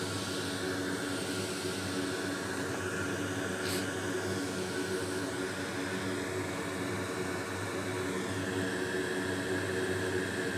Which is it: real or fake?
real